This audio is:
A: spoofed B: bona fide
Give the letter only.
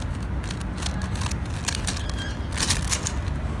B